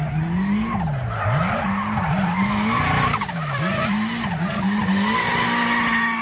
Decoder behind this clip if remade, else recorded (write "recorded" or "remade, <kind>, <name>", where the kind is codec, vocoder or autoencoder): recorded